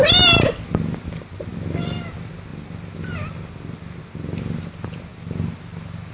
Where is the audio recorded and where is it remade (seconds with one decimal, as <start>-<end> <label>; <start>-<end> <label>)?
0.0-5.1 recorded; 5.1-6.1 remade